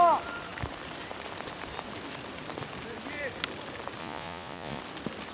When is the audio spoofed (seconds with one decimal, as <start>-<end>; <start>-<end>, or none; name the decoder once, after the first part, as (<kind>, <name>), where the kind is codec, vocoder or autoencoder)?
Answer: 4.0-4.8 (vocoder, Vocos)